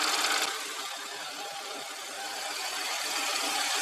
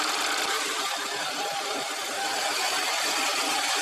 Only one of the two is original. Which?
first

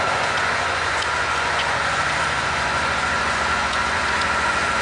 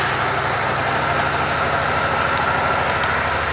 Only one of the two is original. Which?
second